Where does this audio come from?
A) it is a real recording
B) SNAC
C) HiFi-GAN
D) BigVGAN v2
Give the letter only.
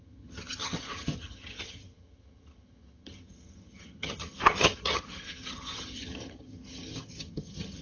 C